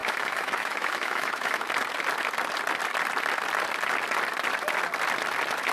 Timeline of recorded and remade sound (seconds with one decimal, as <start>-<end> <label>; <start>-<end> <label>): 0.0-1.7 remade; 1.7-5.7 recorded